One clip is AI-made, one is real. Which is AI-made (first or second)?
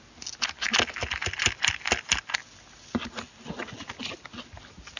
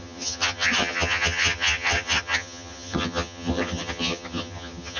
second